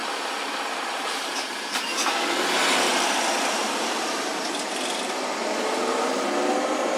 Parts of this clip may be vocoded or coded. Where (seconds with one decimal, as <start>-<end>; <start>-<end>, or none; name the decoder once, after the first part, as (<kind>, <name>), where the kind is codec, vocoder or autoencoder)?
0.0-2.4 (vocoder, BigVGAN v2); 2.9-3.6